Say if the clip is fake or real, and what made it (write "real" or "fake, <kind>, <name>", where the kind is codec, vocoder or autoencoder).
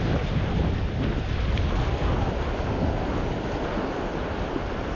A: real